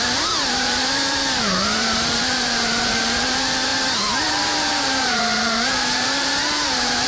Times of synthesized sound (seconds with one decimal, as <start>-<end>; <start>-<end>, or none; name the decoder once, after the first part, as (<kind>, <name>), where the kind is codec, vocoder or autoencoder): 0.0-3.7 (vocoder, BigVGAN v2); 4.3-7.1